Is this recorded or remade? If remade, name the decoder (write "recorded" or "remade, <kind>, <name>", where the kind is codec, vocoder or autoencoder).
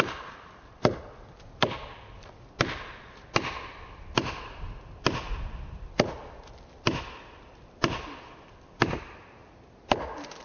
recorded